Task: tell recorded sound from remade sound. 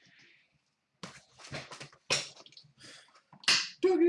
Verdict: recorded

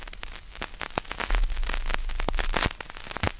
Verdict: recorded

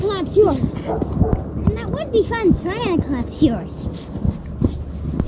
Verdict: recorded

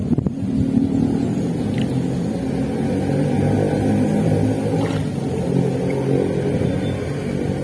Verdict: recorded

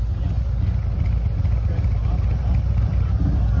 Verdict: recorded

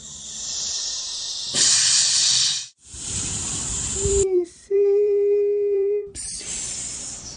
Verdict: remade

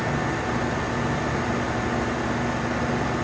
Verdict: recorded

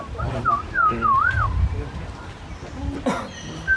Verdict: recorded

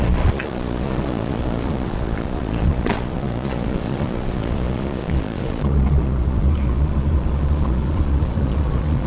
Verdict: remade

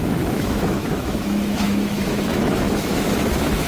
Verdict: remade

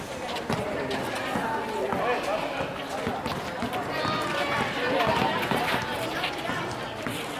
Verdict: recorded